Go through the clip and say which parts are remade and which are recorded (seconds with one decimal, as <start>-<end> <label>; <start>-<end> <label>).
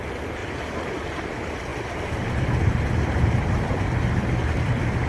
0.0-5.1 recorded